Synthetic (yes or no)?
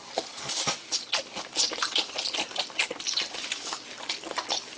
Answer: no